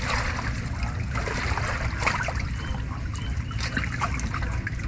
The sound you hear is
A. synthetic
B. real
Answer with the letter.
A